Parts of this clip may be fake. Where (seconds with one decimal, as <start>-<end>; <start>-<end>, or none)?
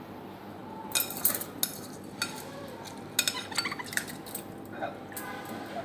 none